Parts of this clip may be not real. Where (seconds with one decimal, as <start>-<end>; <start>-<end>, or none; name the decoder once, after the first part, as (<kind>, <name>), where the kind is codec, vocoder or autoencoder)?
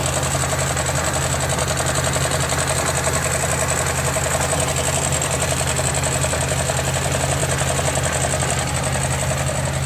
none